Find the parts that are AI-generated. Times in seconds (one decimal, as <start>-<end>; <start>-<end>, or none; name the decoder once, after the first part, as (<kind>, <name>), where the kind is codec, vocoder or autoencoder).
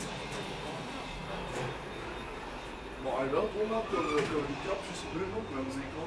none